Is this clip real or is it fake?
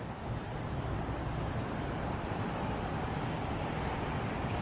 real